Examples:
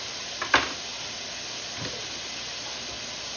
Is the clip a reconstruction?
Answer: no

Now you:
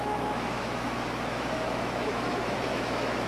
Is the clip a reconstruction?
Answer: yes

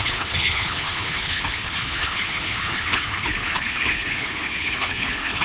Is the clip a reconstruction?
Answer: yes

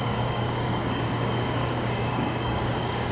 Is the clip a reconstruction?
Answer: yes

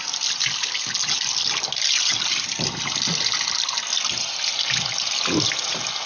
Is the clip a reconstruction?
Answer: no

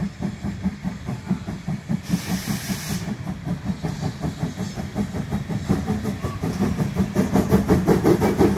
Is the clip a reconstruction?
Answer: yes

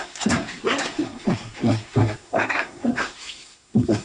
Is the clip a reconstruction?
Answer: yes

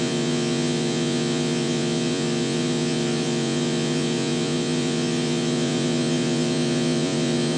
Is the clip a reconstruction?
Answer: yes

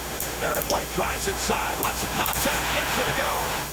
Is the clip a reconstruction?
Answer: yes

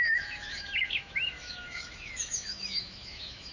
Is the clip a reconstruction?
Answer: yes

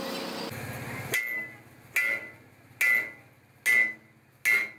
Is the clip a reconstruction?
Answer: no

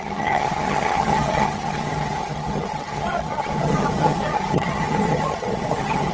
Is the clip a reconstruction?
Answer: yes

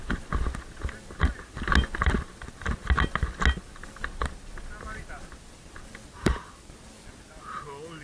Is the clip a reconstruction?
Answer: no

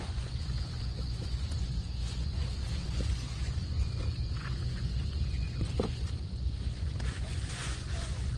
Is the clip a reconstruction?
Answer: yes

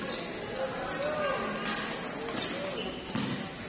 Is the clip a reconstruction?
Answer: no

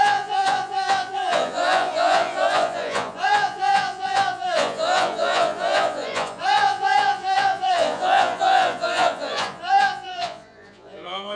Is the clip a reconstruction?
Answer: yes